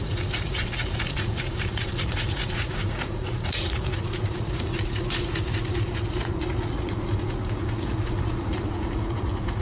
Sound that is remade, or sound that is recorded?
remade